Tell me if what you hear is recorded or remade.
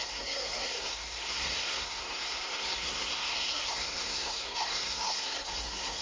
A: remade